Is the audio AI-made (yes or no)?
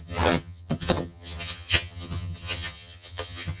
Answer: yes